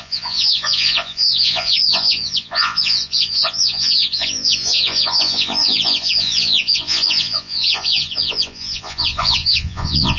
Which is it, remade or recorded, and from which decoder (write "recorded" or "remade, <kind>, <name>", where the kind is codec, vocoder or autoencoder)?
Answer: remade, vocoder, Vocos